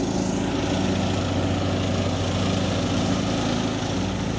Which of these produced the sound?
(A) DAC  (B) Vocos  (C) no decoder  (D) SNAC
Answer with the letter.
C